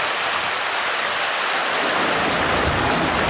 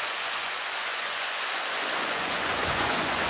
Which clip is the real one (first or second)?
first